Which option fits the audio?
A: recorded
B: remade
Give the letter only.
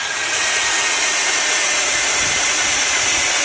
B